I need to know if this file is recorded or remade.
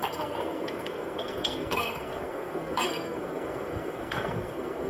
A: remade